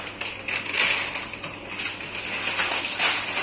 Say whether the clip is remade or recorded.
recorded